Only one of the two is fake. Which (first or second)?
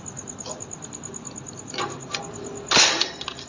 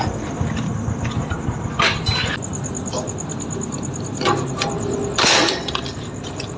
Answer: second